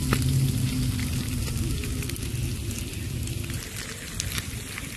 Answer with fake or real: real